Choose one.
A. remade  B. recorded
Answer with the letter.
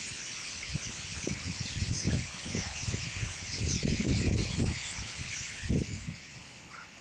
A